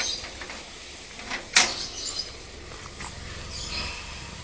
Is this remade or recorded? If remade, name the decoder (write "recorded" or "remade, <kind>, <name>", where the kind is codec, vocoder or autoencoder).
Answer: recorded